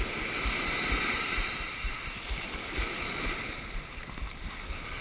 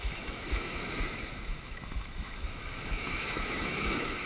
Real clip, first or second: first